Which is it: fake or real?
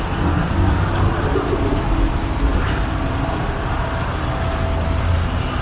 real